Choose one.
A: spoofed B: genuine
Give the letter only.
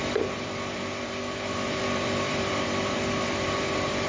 A